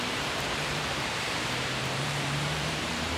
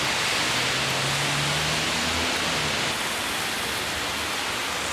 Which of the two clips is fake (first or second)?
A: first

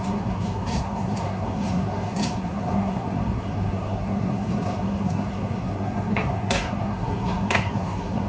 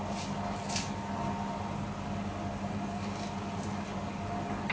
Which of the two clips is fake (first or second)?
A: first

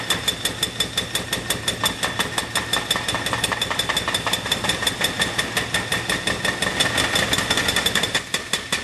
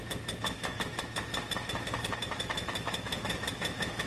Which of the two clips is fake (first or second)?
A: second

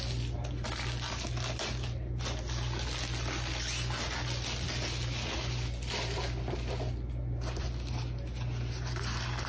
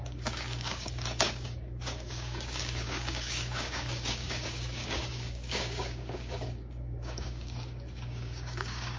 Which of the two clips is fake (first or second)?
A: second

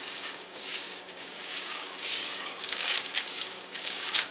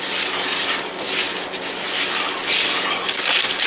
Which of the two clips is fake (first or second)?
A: first